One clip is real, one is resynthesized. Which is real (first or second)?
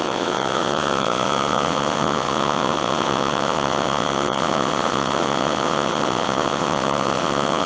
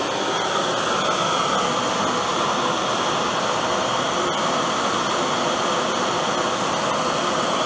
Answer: second